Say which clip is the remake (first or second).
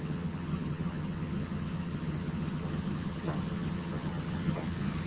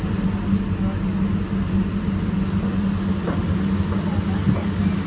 first